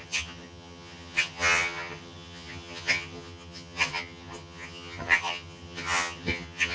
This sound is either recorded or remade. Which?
remade